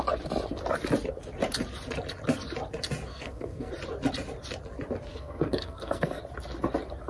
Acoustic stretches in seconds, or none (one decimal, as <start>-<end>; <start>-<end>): 0.0-3.1; 3.7-5.1; 6.2-7.1